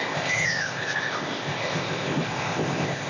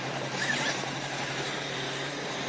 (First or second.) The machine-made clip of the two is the first